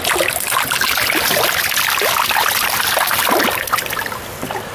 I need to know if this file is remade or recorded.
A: recorded